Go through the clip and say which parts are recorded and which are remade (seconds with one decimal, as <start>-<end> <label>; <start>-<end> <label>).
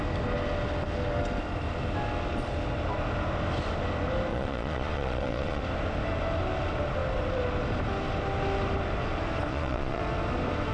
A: 0.0-4.3 recorded; 4.3-5.6 remade; 5.6-9.5 recorded; 9.5-10.0 remade; 10.0-10.7 recorded